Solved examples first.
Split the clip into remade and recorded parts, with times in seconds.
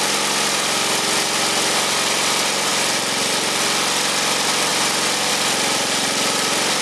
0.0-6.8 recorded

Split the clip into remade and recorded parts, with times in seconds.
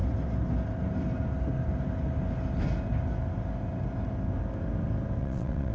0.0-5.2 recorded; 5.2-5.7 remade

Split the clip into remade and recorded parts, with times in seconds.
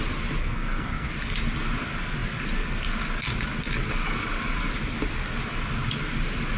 0.0-0.4 recorded; 0.4-1.1 remade; 1.1-6.6 recorded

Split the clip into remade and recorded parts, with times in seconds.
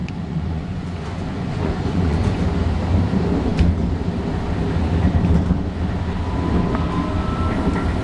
0.0-2.4 remade; 2.4-8.0 recorded